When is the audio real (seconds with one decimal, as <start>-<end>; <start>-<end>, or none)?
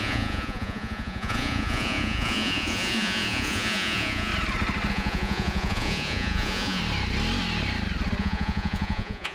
4.3-4.9; 6.8-8.2